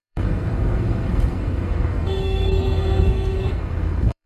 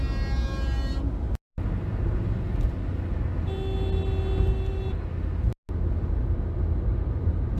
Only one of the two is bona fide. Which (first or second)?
second